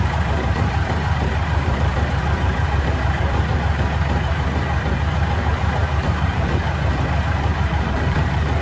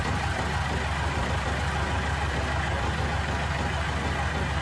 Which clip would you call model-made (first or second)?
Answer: first